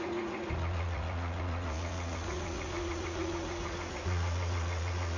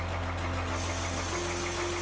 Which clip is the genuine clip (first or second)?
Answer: second